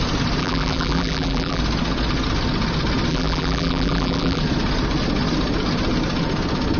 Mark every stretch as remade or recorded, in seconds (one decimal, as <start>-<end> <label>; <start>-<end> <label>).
0.0-0.4 recorded; 0.4-1.6 remade; 1.6-3.1 recorded; 3.1-4.4 remade; 4.4-6.8 recorded